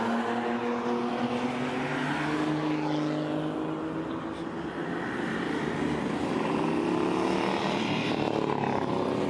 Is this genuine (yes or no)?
yes